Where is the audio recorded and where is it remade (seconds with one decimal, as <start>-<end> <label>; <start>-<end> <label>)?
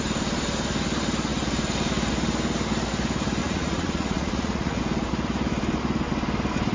0.0-3.4 recorded; 3.4-4.8 remade; 4.8-6.7 recorded